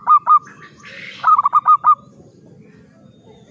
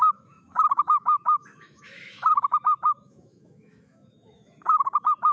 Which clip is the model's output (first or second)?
second